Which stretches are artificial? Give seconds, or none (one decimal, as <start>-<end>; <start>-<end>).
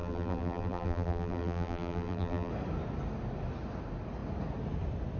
0.0-2.5